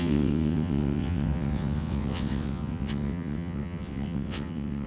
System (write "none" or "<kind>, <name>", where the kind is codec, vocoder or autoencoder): vocoder, WaveNeXt